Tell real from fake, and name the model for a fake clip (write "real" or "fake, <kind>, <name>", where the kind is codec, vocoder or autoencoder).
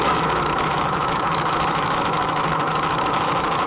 fake, autoencoder, DAC-VAE